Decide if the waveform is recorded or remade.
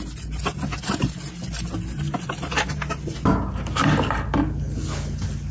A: recorded